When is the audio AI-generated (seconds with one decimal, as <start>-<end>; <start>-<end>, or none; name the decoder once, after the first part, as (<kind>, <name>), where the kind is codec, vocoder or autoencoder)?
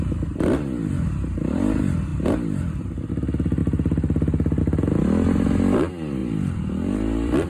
6.2-7.5 (vocoder, BigVGAN v2)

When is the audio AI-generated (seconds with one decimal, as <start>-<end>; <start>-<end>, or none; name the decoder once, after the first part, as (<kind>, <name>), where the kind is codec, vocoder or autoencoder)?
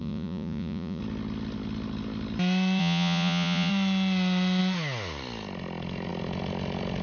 0.0-1.0 (vocoder, Vocos); 2.8-3.7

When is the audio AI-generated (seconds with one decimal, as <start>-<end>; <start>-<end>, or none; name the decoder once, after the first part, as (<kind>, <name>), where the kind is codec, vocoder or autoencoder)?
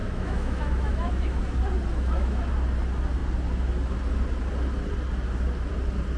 0.0-1.4 (autoencoder, DAC-VAE); 1.9-2.5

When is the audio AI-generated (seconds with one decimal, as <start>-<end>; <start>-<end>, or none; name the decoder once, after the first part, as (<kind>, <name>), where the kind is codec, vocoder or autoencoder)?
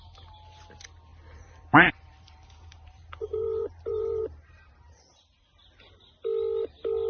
1.1-5.4 (vocoder, BigVGAN v2)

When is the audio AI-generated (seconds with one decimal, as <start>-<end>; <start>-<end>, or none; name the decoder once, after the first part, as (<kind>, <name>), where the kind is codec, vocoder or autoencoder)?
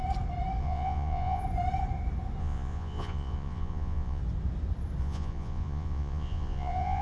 0.6-1.4 (vocoder, Vocos); 2.4-4.2; 5.0-7.0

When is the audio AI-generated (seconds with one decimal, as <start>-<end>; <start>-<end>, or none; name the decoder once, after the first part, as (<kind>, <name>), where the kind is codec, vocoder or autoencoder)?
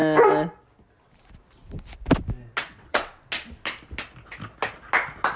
2.6-3.3 (vocoder, WaveNeXt)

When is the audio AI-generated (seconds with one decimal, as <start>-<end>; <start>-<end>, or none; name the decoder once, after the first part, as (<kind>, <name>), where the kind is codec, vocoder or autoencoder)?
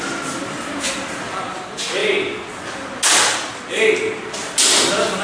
none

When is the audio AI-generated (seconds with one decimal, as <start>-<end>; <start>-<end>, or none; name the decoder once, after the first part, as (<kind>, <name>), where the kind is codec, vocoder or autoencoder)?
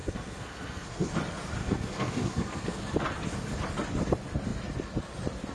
0.0-1.1 (codec, SNAC); 1.6-2.8